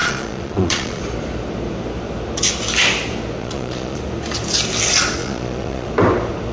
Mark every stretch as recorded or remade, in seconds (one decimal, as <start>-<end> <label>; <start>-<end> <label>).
0.0-1.0 remade; 1.0-3.4 recorded; 3.4-4.0 remade; 4.0-5.2 recorded; 5.2-5.9 remade; 5.9-6.5 recorded